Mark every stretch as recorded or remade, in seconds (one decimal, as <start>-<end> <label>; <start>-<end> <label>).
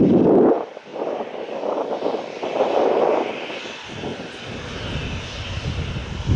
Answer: 0.0-6.4 recorded